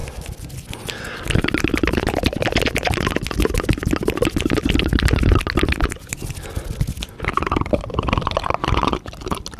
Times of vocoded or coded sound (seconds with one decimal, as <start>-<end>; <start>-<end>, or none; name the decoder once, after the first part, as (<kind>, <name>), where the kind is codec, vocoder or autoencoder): none